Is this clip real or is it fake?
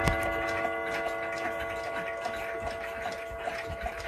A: real